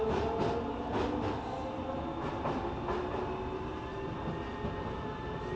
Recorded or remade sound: recorded